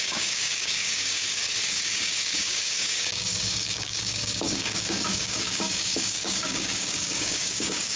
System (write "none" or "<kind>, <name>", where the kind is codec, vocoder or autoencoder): codec, DAC